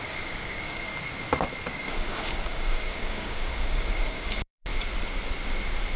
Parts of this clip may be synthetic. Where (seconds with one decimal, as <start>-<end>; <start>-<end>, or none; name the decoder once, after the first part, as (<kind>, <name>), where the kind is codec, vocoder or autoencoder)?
0.0-0.9 (codec, DAC); 1.7-4.7